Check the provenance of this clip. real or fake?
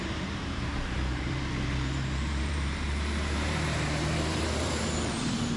fake